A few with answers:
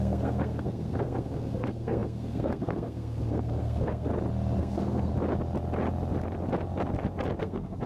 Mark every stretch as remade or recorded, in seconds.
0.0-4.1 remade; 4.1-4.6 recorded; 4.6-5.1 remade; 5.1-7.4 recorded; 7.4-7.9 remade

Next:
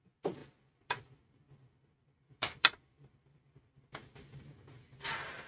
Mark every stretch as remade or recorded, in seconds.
0.0-0.4 recorded; 0.4-3.7 remade; 3.7-5.5 recorded